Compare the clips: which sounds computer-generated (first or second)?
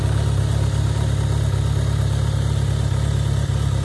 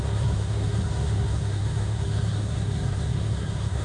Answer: second